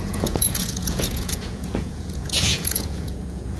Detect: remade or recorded remade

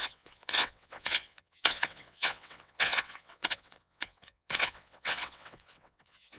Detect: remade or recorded remade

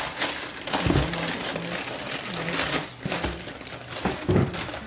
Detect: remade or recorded recorded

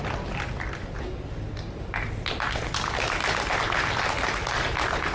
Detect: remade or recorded recorded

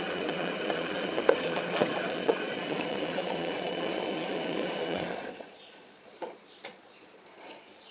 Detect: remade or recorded remade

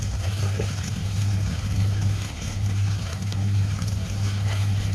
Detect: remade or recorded remade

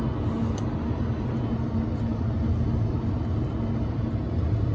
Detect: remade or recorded recorded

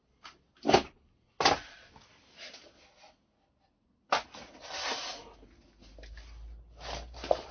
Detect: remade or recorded recorded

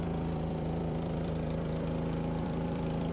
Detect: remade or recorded remade